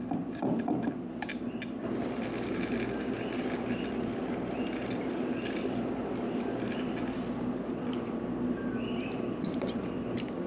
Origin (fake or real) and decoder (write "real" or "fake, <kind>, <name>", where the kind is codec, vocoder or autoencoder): real